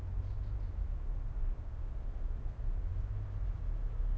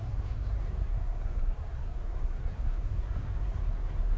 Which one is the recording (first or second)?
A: first